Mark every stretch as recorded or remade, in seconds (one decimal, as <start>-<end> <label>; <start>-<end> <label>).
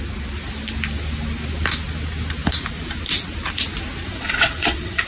0.0-4.1 recorded; 4.1-5.1 remade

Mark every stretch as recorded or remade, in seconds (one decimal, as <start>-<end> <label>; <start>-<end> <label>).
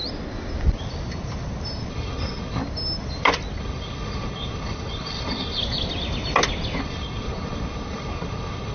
0.0-1.9 recorded; 1.9-2.6 remade; 2.6-3.6 recorded; 3.6-5.6 remade; 5.6-6.8 recorded; 6.8-8.7 remade